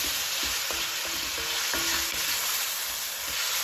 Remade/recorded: recorded